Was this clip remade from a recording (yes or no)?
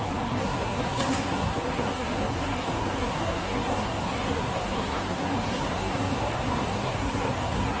yes